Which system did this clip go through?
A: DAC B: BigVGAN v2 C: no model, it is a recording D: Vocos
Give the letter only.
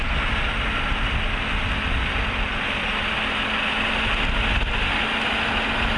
C